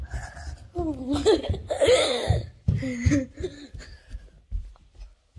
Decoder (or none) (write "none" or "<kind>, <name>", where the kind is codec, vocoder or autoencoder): none